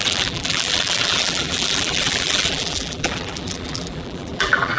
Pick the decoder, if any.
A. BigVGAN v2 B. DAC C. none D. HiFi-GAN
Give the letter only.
A